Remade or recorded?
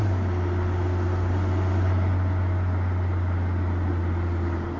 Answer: recorded